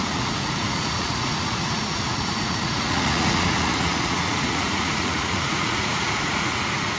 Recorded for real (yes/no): no